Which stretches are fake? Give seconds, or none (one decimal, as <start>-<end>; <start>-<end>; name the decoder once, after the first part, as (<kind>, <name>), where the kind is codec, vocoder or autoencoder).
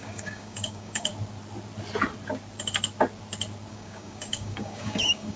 0.0-1.1 (codec, DAC); 3.7-5.4